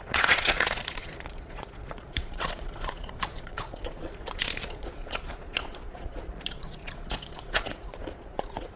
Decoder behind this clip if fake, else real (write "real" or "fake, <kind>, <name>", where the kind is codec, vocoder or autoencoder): fake, vocoder, Vocos